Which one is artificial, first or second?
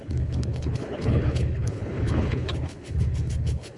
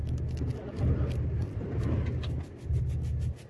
first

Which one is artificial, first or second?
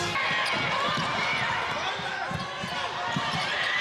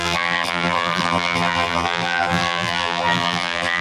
second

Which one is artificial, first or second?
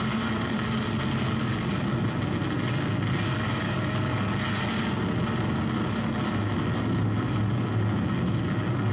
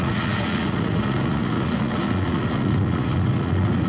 second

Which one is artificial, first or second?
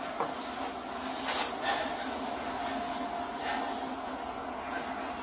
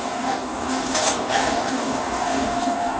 second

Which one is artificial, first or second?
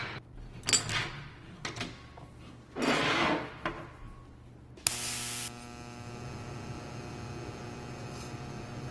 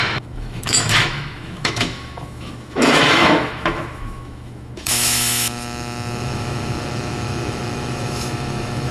second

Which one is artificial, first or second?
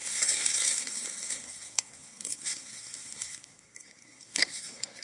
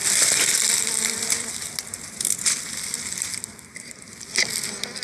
first